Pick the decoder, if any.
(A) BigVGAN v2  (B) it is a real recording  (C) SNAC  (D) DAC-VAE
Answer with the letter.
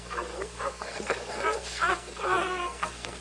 C